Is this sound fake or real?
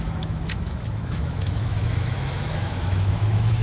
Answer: fake